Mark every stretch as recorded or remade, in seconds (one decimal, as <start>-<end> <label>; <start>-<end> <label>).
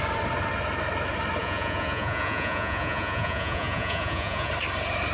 0.0-1.4 recorded; 1.4-4.5 remade; 4.5-5.1 recorded